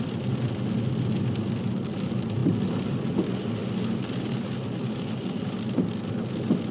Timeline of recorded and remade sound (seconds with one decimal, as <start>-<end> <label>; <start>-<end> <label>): 0.0-6.7 recorded